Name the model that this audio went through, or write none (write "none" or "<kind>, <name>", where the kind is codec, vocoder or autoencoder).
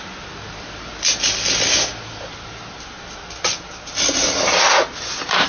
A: none